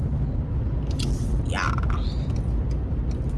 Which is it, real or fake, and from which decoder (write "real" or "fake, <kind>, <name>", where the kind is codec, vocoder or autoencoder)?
real